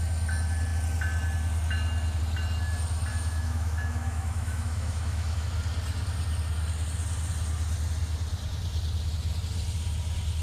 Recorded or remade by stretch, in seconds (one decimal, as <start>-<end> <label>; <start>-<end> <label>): 0.0-3.1 recorded; 3.1-5.5 remade; 5.5-10.4 recorded